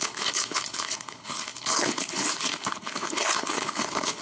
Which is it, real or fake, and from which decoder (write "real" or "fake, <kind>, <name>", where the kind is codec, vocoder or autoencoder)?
fake, codec, HILCodec